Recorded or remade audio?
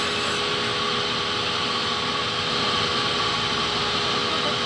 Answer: recorded